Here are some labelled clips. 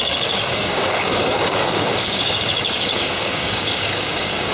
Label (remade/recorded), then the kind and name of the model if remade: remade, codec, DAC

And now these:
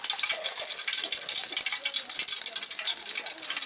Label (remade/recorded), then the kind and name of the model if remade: recorded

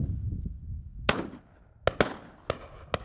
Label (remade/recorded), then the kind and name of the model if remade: recorded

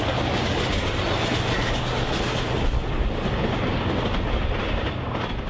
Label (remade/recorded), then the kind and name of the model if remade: recorded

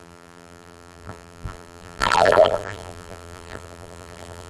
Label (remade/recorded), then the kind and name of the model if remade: remade, vocoder, BigVGAN v2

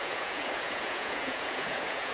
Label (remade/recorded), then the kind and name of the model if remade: remade, vocoder, Vocos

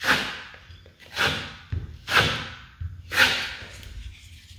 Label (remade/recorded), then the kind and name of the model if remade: recorded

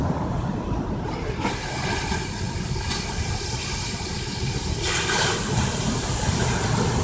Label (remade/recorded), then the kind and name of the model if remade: recorded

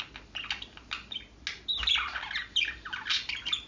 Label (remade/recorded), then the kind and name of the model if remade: recorded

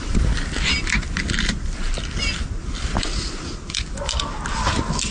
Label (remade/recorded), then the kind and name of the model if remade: recorded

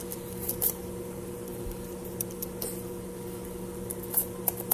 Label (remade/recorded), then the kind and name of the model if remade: remade, vocoder, BigVGAN v2